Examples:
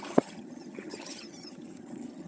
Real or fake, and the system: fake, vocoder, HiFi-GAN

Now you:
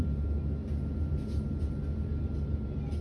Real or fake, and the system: real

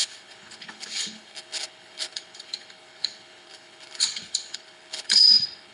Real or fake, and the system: fake, codec, HILCodec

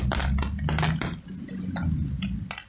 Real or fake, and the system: real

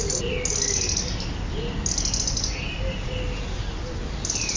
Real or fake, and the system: real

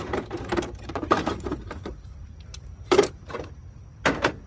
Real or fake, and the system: fake, vocoder, BigVGAN v2